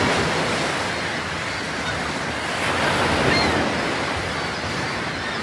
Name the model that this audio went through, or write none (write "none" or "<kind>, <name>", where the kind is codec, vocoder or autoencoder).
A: none